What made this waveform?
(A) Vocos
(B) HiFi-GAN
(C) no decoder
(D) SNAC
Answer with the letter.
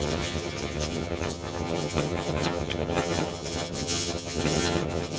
B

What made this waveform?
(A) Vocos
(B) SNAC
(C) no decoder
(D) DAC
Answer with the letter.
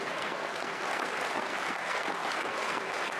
B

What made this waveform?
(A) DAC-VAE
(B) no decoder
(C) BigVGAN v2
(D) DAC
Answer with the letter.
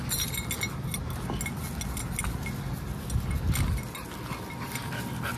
B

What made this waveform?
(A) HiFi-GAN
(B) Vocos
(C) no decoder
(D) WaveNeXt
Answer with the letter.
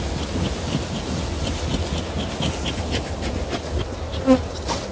C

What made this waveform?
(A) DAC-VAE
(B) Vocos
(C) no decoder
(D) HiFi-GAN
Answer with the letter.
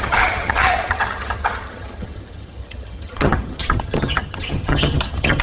D